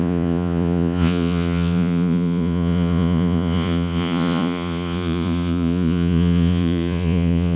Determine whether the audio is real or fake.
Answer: fake